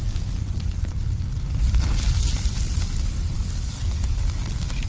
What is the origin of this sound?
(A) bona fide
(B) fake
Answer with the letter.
A